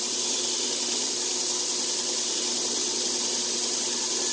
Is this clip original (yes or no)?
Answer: yes